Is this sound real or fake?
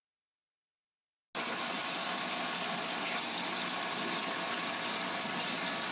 real